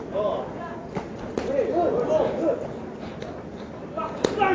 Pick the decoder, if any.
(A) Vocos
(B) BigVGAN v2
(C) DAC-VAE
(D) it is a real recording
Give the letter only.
D